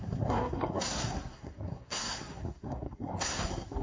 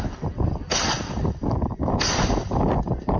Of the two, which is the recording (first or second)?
second